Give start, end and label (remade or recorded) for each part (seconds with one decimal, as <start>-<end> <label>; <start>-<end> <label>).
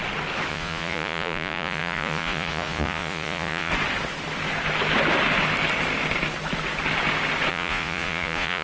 0.0-0.5 recorded; 0.5-3.7 remade; 3.7-7.5 recorded; 7.5-8.6 remade